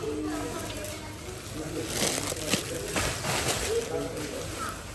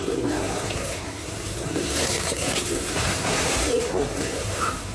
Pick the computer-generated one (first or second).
second